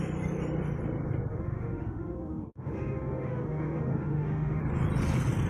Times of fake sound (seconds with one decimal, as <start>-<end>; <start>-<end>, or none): 1.3-4.6